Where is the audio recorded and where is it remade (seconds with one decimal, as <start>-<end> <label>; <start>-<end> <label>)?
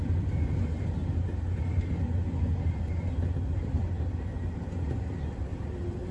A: 0.0-6.1 recorded